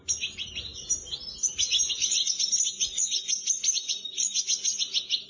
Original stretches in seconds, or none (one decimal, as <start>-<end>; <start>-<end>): 0.0-5.3